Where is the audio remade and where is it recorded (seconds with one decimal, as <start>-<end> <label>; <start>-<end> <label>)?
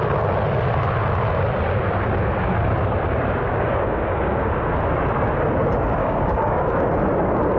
0.0-3.5 recorded; 3.5-4.7 remade; 4.7-6.0 recorded; 6.0-6.9 remade; 6.9-7.6 recorded